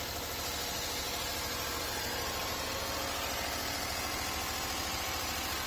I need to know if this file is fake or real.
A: real